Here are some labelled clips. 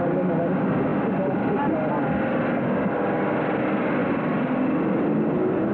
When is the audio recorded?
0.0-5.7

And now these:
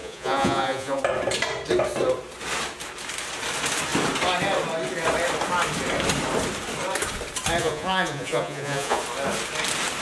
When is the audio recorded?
1.0-7.6; 9.0-10.0

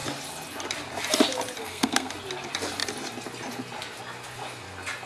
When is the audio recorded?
0.0-1.6; 2.1-5.1

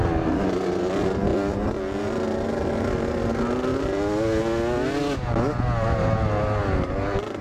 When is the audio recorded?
0.0-7.4

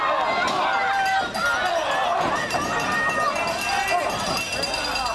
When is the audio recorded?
0.0-5.1

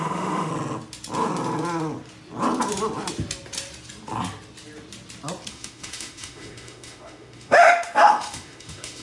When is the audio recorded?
0.5-5.5

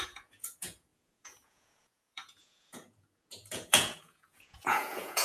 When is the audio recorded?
none